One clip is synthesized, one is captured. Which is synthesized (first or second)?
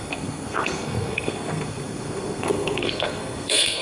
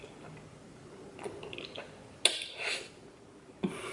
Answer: first